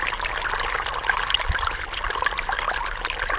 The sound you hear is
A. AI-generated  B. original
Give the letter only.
B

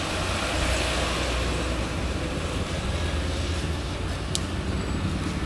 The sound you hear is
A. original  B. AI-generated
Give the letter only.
A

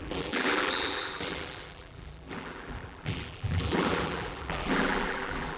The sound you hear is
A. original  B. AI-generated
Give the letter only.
B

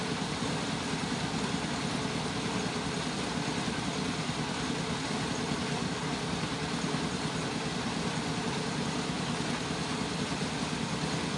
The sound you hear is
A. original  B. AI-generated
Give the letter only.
A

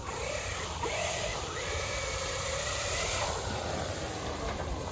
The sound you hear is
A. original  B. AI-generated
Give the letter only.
B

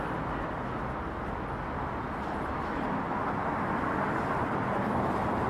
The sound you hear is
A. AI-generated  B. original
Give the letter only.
B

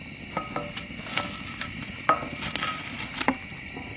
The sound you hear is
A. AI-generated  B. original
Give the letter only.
B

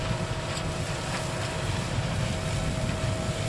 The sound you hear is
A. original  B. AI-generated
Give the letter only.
B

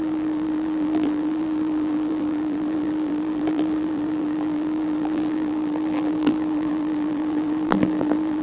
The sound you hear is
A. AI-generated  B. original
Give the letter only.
A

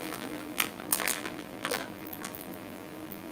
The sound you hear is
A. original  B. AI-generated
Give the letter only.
B